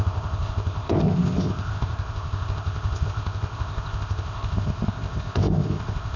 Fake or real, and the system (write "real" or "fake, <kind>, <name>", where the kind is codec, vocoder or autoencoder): fake, codec, ZipCodec